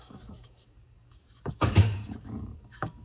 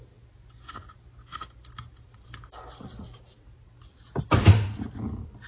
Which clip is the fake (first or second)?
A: first